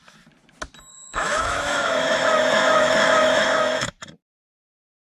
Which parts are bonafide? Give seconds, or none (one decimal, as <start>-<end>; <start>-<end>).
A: 0.0-0.9; 3.9-5.0